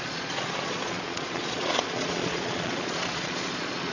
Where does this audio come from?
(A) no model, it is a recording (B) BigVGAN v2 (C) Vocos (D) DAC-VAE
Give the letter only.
C